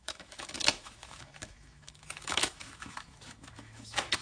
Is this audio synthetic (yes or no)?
yes